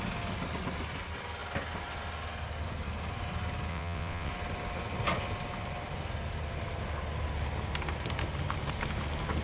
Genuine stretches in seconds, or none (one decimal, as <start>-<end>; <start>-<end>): 0.0-3.7; 4.3-9.4